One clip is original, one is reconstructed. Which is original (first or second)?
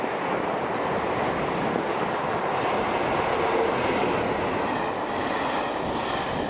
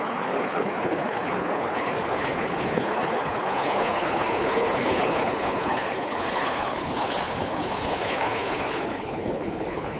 first